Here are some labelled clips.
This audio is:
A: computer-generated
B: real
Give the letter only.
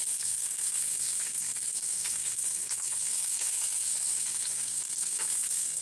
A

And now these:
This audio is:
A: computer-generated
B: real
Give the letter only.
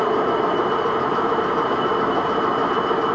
B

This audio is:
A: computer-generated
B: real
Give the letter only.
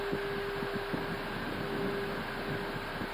B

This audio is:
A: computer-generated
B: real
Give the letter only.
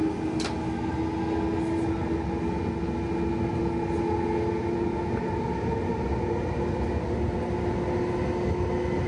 B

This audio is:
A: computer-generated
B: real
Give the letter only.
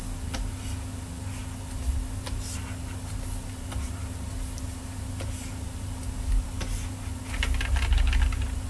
B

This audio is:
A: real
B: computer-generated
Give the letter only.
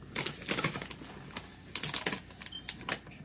A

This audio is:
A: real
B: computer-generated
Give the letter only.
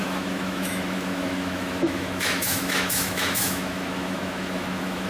B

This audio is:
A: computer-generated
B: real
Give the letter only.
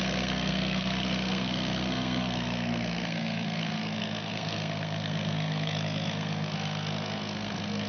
A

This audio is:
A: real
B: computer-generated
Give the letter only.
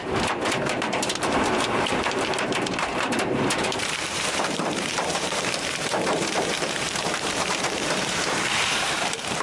B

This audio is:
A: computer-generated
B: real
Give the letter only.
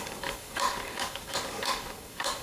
A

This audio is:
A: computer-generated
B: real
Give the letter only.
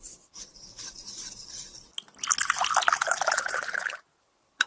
B